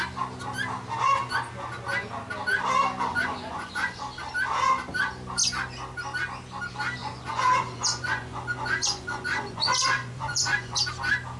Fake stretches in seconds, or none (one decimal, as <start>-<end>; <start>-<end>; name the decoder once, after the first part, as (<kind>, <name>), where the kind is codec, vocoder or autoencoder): 3.1-4.0 (vocoder, Vocos); 7.0-10.8